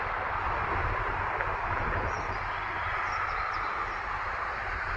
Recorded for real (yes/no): yes